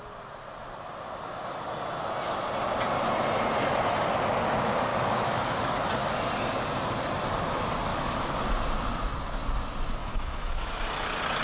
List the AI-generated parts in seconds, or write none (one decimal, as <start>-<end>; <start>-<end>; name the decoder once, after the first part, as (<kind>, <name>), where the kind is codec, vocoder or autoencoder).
4.9-5.7 (autoencoder, DAC-VAE); 7.9-8.4; 10.0-10.8